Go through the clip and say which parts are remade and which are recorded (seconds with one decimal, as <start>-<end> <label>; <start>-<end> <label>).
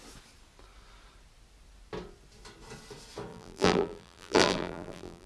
0.0-3.3 recorded; 3.3-5.3 remade